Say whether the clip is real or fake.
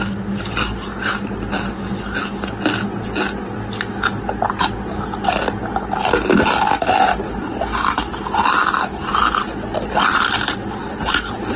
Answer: real